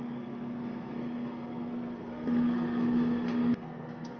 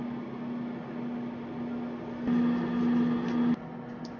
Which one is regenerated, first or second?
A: first